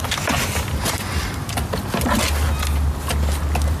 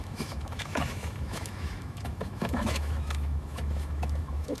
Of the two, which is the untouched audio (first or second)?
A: first